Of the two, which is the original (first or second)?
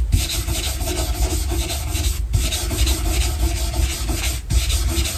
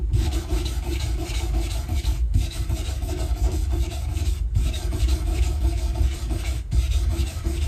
first